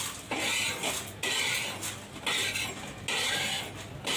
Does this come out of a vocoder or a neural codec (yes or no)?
no